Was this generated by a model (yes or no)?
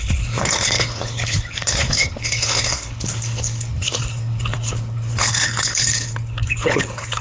yes